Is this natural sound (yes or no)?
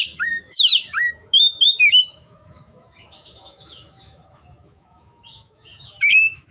no